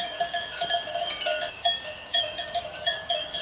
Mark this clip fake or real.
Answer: fake